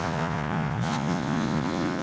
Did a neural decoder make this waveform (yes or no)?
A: yes